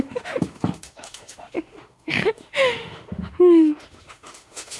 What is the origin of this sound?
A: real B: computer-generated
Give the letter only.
B